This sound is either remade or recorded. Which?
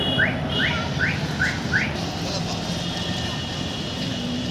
recorded